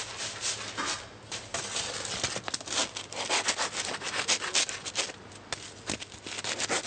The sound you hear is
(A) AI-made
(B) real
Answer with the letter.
B